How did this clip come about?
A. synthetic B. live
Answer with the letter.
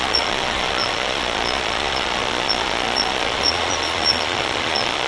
A